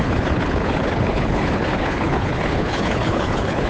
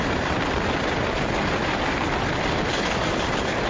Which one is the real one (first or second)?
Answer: second